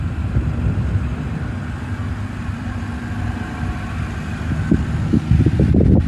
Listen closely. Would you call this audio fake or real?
real